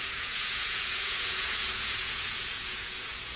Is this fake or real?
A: fake